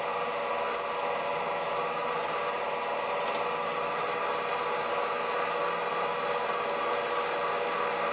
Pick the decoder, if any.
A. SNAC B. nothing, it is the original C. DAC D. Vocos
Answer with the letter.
B